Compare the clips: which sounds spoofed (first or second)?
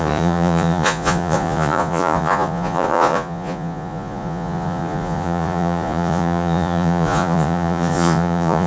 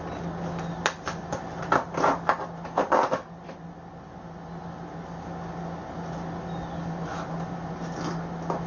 first